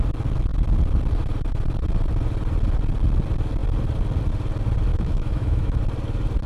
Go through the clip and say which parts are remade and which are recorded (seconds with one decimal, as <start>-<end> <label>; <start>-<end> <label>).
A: 0.0-4.9 recorded; 4.9-5.8 remade; 5.8-6.5 recorded